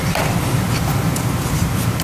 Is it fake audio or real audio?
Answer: real